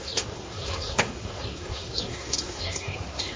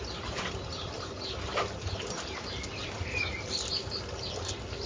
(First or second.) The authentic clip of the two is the second